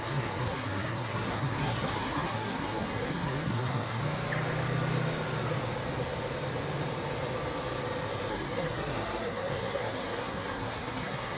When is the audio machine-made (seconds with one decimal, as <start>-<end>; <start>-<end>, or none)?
0.0-4.0; 8.3-11.4